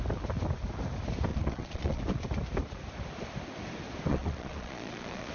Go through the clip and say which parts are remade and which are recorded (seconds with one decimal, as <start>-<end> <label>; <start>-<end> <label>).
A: 0.0-1.3 recorded; 1.3-2.0 remade; 2.0-4.1 recorded; 4.1-5.3 remade